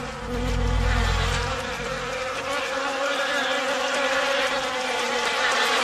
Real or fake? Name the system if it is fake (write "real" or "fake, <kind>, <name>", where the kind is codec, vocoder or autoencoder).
real